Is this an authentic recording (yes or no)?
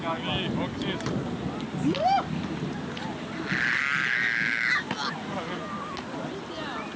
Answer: yes